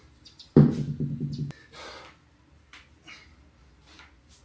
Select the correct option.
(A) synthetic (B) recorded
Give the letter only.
B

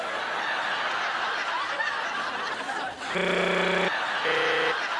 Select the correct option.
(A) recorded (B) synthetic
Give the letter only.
A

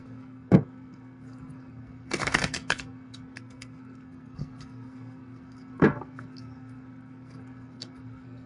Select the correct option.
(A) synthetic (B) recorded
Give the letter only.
A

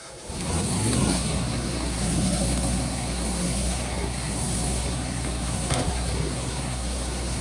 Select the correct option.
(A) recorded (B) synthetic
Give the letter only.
B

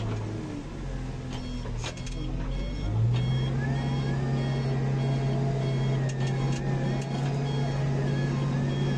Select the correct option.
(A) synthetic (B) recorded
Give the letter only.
B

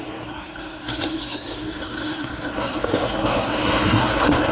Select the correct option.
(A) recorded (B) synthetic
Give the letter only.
B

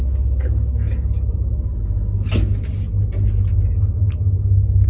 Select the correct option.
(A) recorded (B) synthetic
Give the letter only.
A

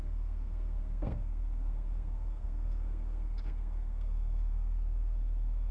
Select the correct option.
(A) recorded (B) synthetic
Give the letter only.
B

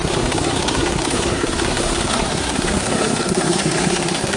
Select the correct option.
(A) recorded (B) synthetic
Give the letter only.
B